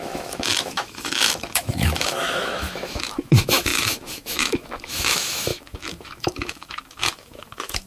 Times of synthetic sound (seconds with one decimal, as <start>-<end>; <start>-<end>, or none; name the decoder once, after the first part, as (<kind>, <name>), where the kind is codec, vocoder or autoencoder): 0.0-7.9 (autoencoder, DAC-VAE)